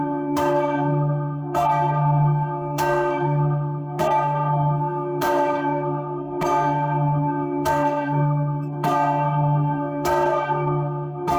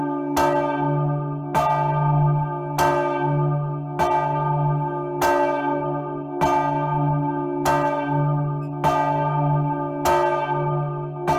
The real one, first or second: second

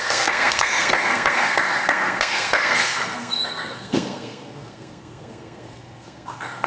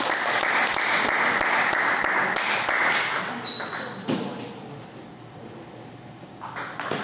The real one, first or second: second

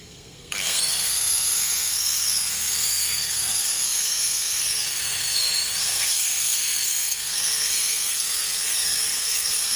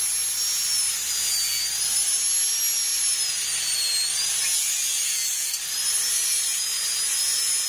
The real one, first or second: second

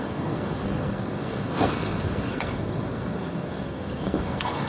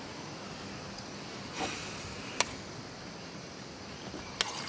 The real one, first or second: second